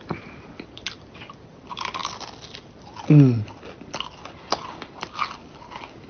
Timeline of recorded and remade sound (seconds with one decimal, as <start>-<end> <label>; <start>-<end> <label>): 0.0-6.1 recorded